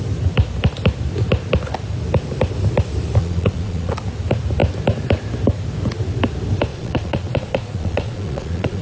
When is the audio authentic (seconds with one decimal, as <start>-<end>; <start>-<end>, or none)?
0.0-3.2; 3.9-6.7